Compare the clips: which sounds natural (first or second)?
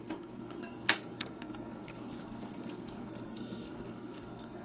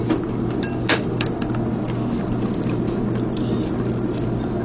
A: second